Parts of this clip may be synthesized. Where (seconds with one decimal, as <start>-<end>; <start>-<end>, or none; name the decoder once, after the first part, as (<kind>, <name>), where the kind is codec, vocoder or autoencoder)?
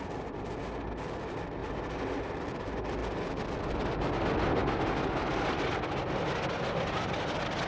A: none